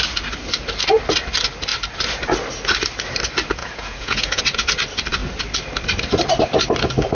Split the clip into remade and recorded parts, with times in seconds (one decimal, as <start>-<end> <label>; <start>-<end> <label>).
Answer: 0.0-3.6 recorded; 3.6-4.4 remade; 4.4-7.1 recorded